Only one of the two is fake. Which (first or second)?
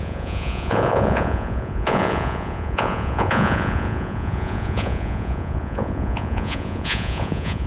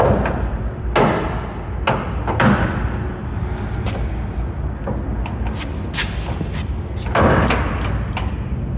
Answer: first